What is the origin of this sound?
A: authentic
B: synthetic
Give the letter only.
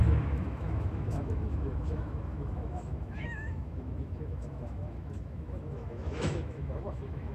B